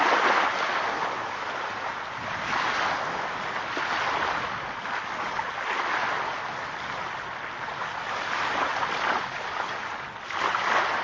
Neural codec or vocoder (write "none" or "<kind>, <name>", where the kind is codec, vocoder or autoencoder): none